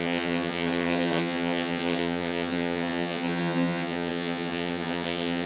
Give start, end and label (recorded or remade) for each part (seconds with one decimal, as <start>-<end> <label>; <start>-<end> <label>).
0.0-5.5 remade